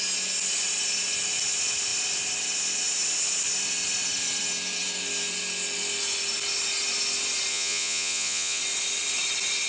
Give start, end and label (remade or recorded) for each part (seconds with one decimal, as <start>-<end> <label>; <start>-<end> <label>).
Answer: 0.0-7.5 recorded; 7.5-8.6 remade; 8.6-9.7 recorded